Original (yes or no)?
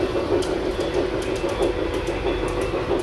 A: yes